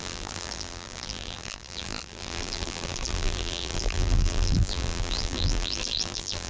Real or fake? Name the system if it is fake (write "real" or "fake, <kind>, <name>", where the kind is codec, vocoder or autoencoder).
fake, vocoder, BigVGAN v2